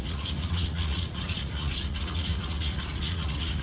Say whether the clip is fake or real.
fake